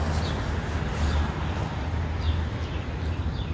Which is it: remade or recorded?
recorded